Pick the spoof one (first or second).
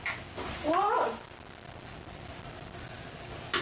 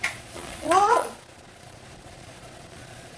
second